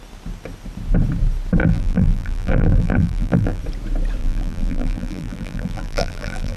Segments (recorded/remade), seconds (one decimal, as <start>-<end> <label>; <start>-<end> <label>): 0.0-1.6 recorded; 1.6-3.6 remade; 3.6-4.2 recorded; 4.2-6.6 remade

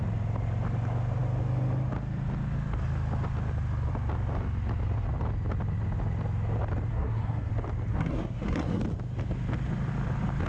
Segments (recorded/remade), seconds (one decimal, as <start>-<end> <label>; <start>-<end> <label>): 0.0-6.9 recorded; 6.9-7.5 remade; 7.5-7.9 recorded; 7.9-8.8 remade; 8.8-10.5 recorded

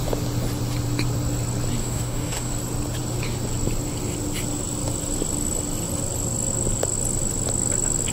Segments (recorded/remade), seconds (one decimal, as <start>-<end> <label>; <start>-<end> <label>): 0.0-1.8 recorded; 1.8-2.5 remade; 2.5-8.1 recorded